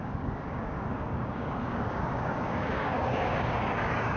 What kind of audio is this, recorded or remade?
remade